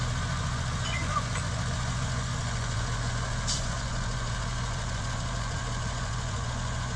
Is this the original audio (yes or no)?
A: no